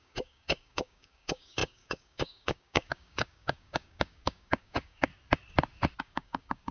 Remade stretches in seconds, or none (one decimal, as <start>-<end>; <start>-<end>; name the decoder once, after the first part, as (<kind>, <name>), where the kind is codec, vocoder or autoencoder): 0.0-5.1 (codec, DAC); 6.0-6.7